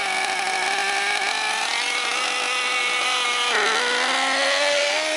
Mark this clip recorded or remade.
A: recorded